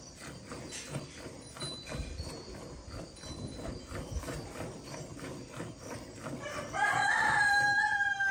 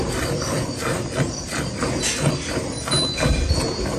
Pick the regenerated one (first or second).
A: first